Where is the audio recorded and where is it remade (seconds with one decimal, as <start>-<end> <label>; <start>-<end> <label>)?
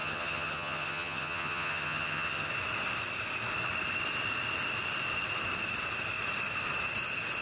0.0-2.5 remade; 2.5-7.4 recorded